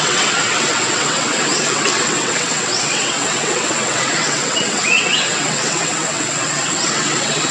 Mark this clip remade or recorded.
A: remade